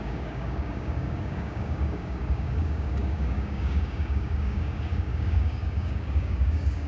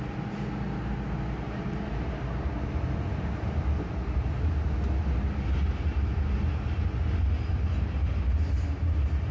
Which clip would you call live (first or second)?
second